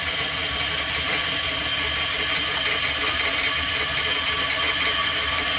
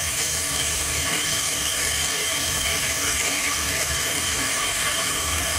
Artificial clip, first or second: second